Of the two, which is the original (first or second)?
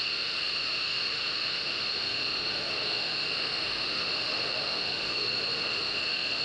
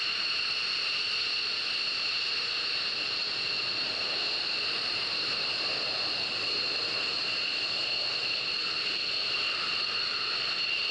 second